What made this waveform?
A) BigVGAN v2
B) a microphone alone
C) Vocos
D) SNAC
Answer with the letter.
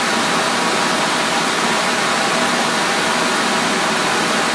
B